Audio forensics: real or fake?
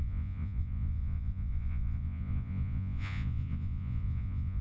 fake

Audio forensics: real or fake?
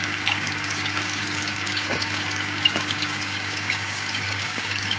fake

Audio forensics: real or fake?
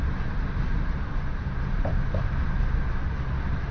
real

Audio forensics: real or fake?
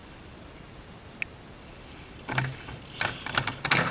real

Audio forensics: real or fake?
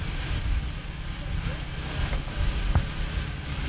real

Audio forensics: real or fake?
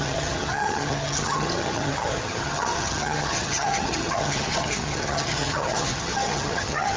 fake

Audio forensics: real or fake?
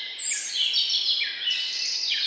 real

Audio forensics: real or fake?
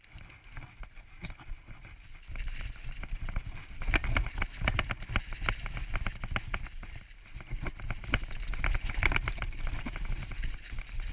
real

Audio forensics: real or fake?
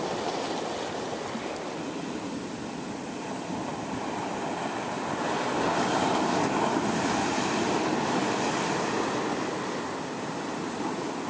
real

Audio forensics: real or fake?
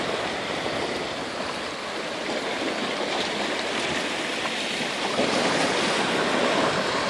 real